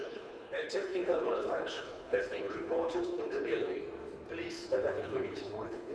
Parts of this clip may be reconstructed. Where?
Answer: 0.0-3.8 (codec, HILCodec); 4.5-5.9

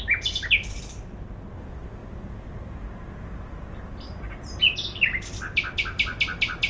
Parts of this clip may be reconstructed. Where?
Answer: none

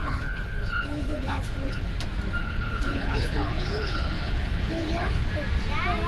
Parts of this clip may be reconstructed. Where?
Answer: 0.0-1.9 (codec, HILCodec); 2.4-5.3